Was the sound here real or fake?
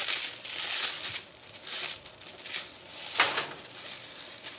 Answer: real